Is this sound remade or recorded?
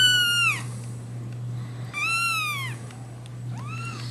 recorded